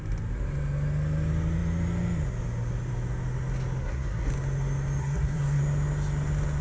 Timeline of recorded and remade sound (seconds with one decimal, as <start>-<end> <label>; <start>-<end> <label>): 0.0-3.8 recorded; 3.8-4.3 remade; 4.3-5.0 recorded; 5.0-5.6 remade; 5.6-6.6 recorded